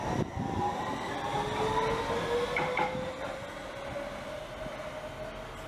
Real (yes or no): yes